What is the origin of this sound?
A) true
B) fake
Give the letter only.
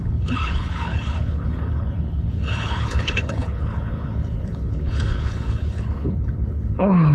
B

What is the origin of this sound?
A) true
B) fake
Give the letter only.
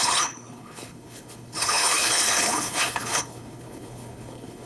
B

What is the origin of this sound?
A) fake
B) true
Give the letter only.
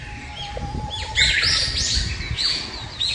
B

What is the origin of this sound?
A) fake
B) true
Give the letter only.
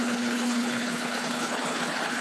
A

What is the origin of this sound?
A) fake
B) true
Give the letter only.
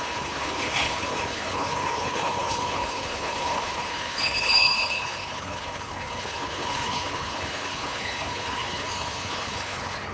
A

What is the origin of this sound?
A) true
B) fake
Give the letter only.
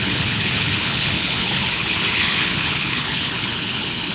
B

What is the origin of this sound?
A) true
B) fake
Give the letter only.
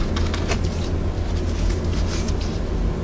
A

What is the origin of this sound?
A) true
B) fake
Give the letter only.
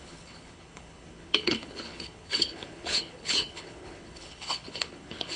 B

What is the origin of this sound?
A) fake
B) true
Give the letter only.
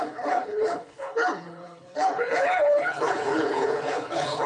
A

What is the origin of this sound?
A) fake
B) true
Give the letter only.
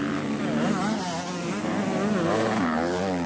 B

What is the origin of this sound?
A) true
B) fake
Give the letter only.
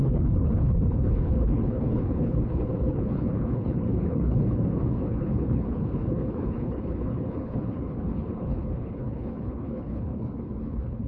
B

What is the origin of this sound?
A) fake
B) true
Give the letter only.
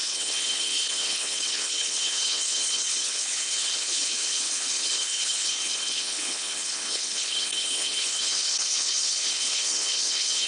A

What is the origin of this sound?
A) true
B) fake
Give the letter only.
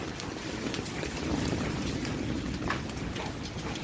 A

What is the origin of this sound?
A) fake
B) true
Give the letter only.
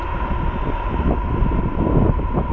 B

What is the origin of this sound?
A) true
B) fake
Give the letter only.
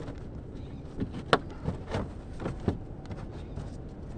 A